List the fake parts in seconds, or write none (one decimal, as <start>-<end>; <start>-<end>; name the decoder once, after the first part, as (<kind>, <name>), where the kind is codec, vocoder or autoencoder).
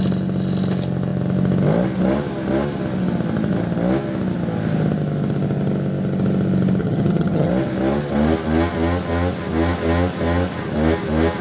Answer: 6.8-7.5 (vocoder, HiFi-GAN)